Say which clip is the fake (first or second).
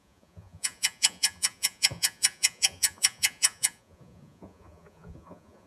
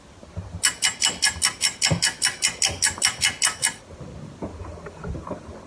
first